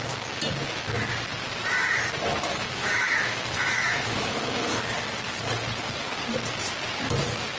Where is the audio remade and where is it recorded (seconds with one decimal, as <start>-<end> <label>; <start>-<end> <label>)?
0.0-2.5 recorded; 2.5-4.7 remade; 4.7-7.6 recorded